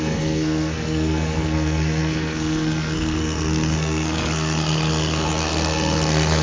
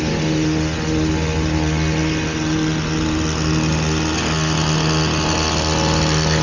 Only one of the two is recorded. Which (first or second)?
second